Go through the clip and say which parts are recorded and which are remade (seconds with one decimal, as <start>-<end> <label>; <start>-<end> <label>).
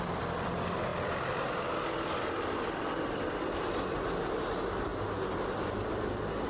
0.0-6.5 recorded